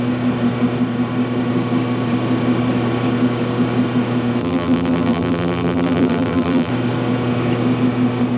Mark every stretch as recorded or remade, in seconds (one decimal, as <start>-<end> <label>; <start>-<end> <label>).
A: 0.0-4.4 recorded; 4.4-6.7 remade; 6.7-8.4 recorded